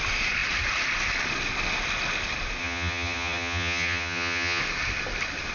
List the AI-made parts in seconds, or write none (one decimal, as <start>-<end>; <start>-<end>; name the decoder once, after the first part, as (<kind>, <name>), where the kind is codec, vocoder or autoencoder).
2.6-4.6 (vocoder, HiFi-GAN)